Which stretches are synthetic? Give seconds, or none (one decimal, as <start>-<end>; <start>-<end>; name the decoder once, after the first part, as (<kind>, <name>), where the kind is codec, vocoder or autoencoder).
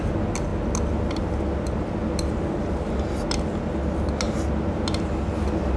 none